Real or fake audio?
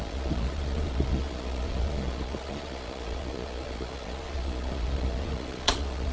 fake